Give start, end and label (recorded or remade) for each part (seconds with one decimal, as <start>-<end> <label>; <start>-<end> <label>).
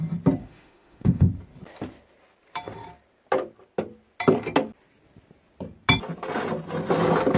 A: 0.0-0.4 recorded; 0.4-1.3 remade; 1.3-7.4 recorded